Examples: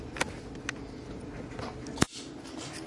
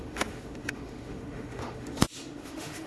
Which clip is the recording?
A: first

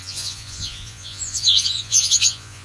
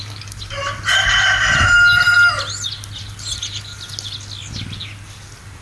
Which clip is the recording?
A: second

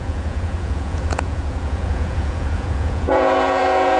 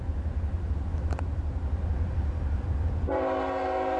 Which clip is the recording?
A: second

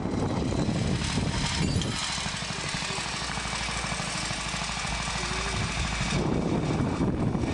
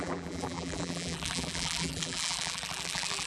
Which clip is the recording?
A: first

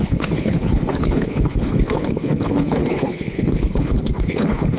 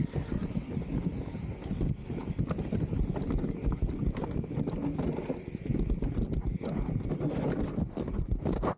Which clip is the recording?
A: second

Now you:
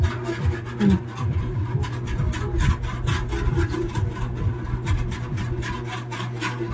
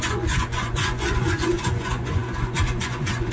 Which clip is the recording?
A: first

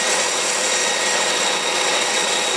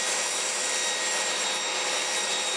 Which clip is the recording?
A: second